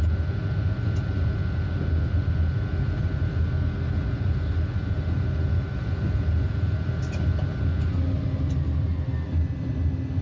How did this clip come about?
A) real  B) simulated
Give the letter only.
A